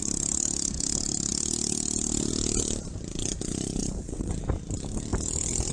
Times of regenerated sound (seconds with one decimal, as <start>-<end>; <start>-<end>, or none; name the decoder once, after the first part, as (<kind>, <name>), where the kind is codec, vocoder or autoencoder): 3.8-4.3 (vocoder, WaveNeXt)